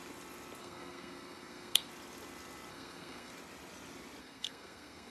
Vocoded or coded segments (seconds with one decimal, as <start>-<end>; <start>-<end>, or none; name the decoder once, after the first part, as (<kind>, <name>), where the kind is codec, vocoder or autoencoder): 0.6-1.9 (codec, SNAC); 2.7-3.3; 4.2-5.1